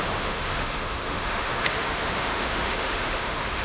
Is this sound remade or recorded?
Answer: remade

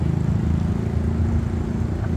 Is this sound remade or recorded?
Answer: recorded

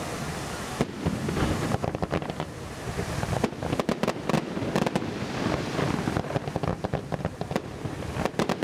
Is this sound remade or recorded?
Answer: recorded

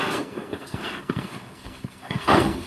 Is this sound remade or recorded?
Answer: remade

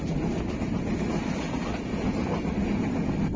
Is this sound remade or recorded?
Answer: recorded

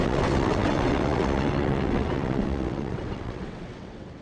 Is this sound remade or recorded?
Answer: remade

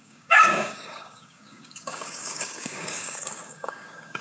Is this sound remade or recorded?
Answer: remade